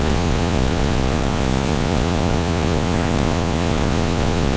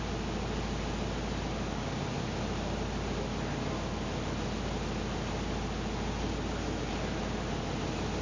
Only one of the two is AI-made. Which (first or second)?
first